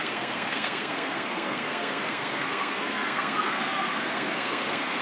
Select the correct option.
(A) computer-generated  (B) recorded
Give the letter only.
A